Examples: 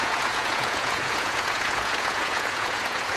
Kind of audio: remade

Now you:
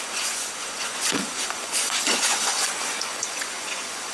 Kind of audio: remade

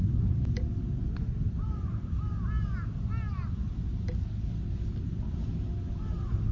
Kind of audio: recorded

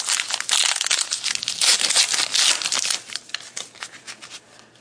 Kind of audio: recorded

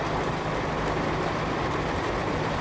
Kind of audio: remade